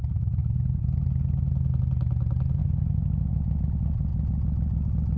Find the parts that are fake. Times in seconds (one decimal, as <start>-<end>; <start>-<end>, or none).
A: 2.6-3.6